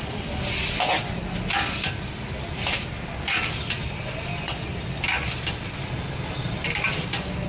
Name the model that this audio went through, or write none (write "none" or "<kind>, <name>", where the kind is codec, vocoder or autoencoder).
none